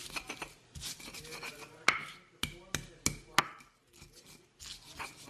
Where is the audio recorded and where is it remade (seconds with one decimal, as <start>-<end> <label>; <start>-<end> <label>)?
0.0-5.3 recorded